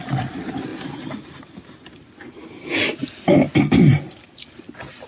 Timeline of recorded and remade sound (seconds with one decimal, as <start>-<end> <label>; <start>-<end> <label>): 0.0-5.1 recorded